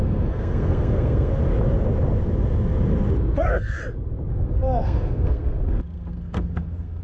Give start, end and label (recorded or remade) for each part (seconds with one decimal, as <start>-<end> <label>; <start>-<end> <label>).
0.0-1.3 remade; 1.3-3.4 recorded; 3.4-3.8 remade; 3.8-4.3 recorded; 4.3-7.0 remade